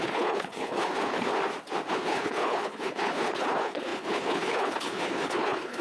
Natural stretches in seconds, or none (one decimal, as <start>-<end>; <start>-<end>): 1.3-1.9